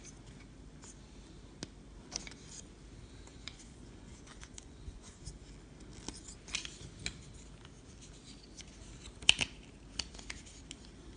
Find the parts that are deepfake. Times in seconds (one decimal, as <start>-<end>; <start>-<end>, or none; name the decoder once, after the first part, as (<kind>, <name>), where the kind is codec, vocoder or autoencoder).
3.3-5.2 (vocoder, Vocos)